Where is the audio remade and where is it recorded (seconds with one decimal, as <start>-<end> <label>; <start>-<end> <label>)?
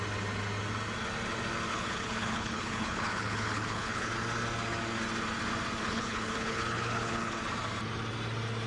0.0-1.7 recorded; 1.7-4.1 remade; 4.1-5.8 recorded; 5.8-7.4 remade; 7.4-8.7 recorded